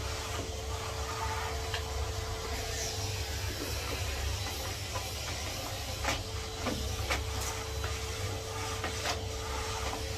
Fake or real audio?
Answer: real